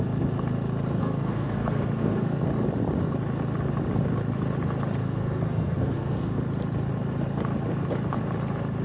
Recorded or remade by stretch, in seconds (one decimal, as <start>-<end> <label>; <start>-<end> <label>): 0.0-1.0 recorded; 1.0-2.4 remade; 2.4-5.0 recorded; 5.0-6.4 remade; 6.4-8.8 recorded